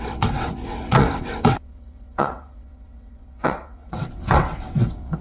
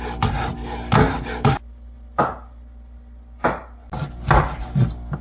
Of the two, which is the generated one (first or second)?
first